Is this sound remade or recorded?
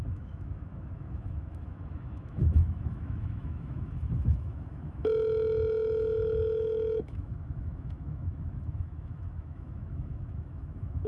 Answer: remade